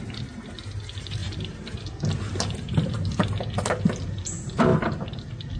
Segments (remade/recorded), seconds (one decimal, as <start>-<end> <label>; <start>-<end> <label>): 0.0-5.6 recorded